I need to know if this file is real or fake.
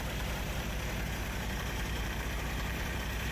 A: fake